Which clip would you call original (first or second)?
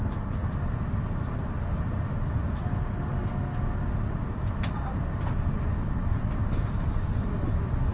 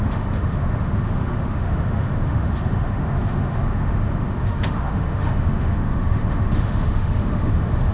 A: first